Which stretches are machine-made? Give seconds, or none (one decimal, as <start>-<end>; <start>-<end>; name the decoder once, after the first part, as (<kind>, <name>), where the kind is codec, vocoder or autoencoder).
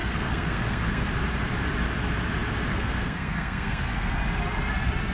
0.0-1.1 (codec, SNAC); 2.7-4.1